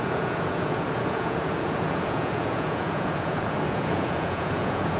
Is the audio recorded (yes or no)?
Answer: no